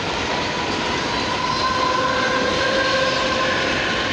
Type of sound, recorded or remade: recorded